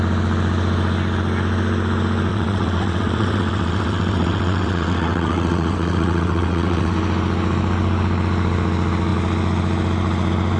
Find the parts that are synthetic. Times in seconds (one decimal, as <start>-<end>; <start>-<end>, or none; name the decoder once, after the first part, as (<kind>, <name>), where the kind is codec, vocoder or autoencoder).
2.3-6.9 (vocoder, WaveNeXt)